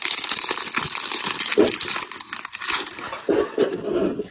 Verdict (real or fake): real